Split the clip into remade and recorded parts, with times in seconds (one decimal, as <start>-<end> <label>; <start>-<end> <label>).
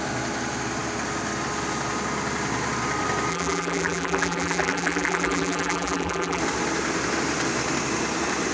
0.0-3.3 recorded; 3.3-6.4 remade; 6.4-8.5 recorded